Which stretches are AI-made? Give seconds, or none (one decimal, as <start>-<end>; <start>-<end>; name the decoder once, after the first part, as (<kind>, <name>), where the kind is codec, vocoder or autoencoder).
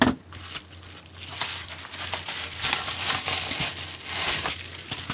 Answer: 1.3-3.7 (vocoder, BigVGAN v2)